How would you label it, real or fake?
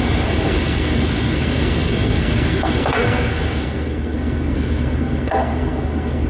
fake